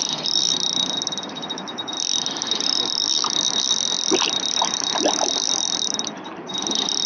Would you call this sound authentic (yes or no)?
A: no